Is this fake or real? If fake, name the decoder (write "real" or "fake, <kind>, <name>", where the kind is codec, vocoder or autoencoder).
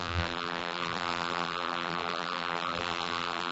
fake, vocoder, BigVGAN v2